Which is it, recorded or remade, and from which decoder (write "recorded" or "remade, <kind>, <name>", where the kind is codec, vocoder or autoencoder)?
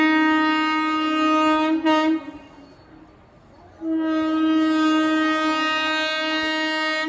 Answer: recorded